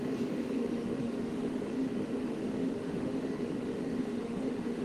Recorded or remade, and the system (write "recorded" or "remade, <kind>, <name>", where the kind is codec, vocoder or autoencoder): remade, autoencoder, DAC-VAE